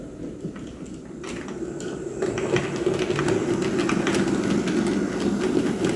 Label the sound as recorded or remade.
recorded